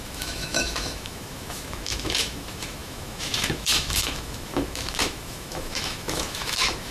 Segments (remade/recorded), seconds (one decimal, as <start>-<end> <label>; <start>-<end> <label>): 0.0-6.9 remade